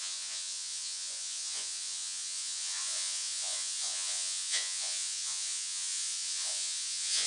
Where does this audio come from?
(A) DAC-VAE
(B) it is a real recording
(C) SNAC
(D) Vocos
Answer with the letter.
D